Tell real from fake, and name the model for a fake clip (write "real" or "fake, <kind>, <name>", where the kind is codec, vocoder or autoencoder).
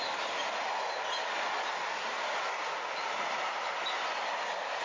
real